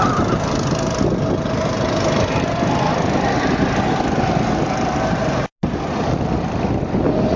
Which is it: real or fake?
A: real